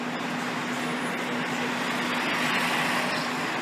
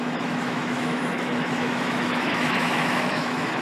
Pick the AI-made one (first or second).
second